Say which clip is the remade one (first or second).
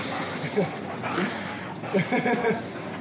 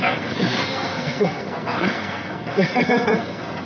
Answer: second